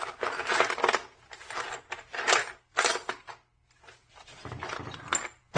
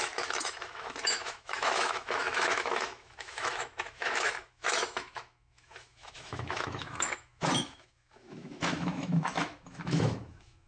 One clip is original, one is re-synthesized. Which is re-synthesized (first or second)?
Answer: second